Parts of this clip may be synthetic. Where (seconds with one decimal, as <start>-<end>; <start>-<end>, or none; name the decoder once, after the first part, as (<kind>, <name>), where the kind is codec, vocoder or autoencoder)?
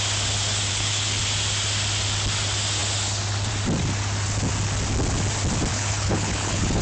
0.7-1.2 (codec, HILCodec); 5.7-6.8